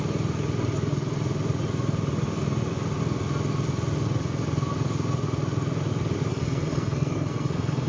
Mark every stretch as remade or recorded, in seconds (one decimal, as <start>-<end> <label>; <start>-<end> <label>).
0.0-6.3 recorded; 6.3-7.9 remade